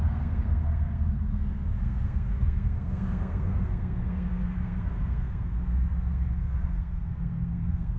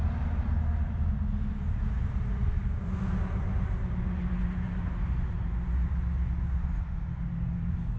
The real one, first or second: second